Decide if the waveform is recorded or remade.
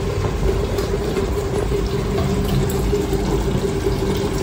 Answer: recorded